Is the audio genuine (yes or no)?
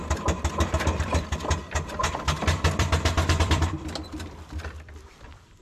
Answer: no